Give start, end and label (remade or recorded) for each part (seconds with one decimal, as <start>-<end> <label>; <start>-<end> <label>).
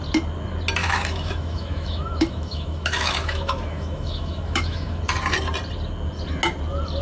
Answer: 0.0-0.8 recorded; 0.8-5.0 remade; 5.0-7.0 recorded